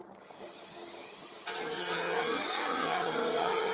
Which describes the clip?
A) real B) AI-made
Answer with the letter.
B